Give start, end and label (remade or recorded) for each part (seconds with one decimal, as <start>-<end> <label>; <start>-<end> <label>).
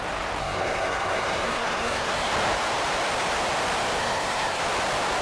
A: 0.0-0.4 recorded; 0.4-2.3 remade; 2.3-4.0 recorded; 4.0-4.6 remade; 4.6-5.2 recorded